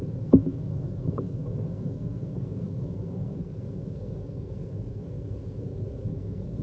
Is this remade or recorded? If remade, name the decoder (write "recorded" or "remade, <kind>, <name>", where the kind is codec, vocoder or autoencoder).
remade, codec, SNAC